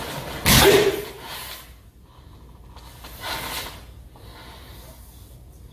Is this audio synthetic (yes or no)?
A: no